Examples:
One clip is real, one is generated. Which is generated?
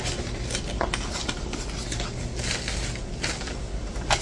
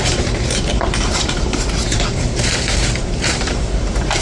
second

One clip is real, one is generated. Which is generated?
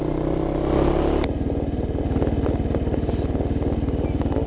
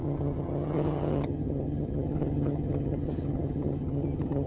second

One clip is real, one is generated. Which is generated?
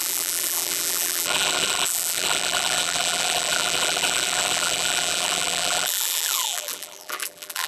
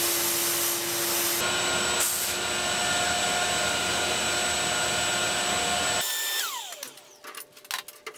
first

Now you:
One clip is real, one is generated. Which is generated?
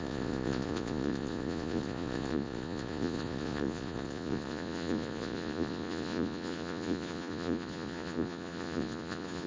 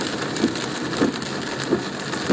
first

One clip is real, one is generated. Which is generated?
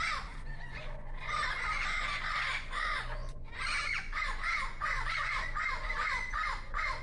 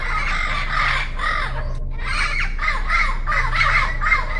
first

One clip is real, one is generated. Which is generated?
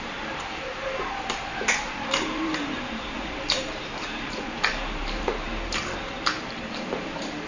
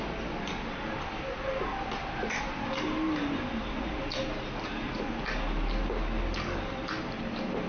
first